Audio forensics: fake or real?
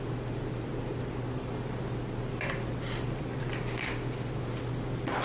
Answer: real